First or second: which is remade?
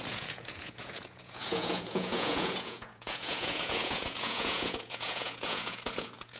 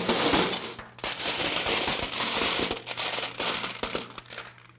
first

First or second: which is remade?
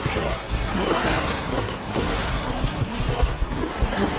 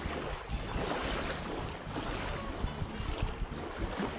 first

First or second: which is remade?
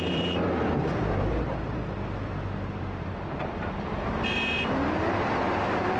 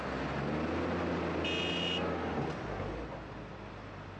first